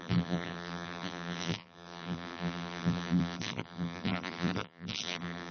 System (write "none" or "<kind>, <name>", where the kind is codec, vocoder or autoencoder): vocoder, BigVGAN v2